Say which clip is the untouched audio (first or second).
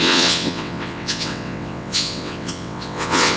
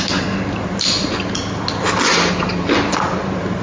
second